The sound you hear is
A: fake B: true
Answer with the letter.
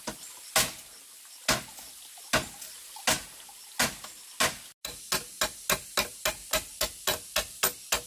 B